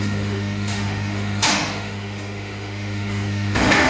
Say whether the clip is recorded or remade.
remade